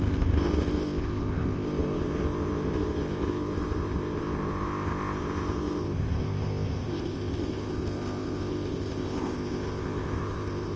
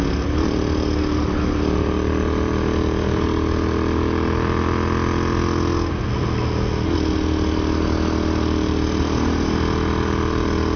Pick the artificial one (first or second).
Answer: first